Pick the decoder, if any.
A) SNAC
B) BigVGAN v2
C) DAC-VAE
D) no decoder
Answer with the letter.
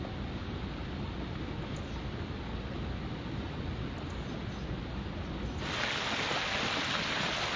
D